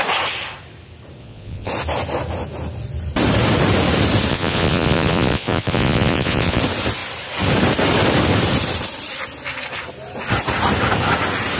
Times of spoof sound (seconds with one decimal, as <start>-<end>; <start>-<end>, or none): 1.2-1.7; 4.3-6.6